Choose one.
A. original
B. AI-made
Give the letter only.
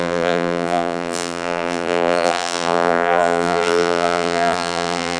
B